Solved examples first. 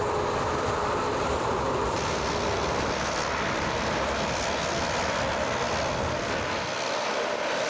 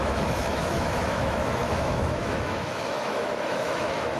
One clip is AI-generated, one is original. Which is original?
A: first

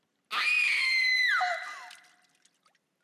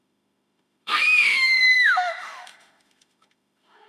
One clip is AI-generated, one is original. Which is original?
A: first